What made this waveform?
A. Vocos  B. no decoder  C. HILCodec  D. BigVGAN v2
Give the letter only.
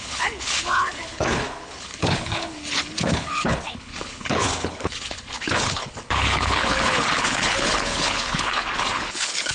C